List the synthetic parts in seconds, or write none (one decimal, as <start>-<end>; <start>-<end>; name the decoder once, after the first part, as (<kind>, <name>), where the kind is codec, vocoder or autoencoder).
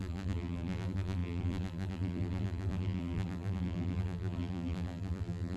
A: 0.0-5.6 (vocoder, BigVGAN v2)